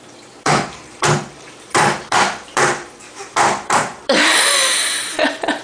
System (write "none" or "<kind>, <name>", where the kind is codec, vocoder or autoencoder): vocoder, BigVGAN v2